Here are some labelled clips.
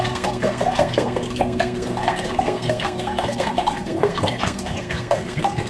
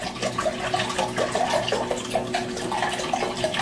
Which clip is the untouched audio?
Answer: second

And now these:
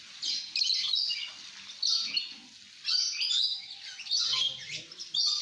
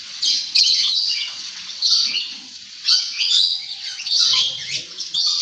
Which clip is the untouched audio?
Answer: first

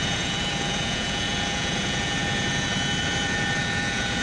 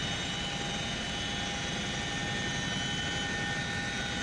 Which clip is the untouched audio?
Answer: second